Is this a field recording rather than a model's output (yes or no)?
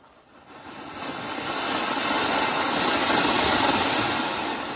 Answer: yes